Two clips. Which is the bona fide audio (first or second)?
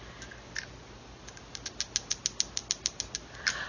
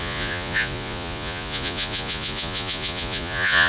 first